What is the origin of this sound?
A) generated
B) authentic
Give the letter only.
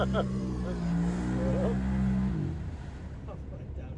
B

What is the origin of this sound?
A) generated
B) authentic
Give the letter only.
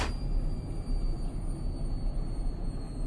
B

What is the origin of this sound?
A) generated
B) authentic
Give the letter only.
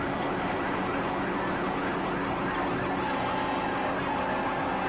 B